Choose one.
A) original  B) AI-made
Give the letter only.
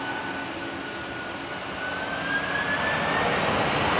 A